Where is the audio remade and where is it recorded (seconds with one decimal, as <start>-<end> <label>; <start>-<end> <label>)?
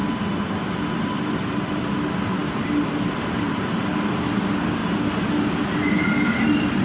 0.0-1.0 recorded; 1.0-4.8 remade; 4.8-5.9 recorded; 5.9-6.8 remade